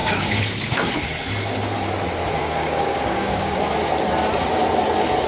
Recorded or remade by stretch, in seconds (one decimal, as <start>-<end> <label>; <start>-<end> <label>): 0.0-0.9 remade; 0.9-2.4 recorded; 2.4-3.6 remade; 3.6-5.3 recorded